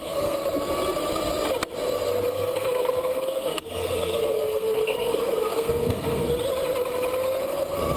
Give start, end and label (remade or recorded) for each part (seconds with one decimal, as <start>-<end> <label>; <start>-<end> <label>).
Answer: 0.0-0.4 remade; 0.4-2.3 recorded; 2.3-6.3 remade; 6.3-7.4 recorded; 7.4-8.0 remade